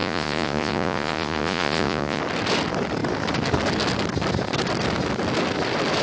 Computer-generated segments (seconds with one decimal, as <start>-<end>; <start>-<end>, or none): 0.0-2.2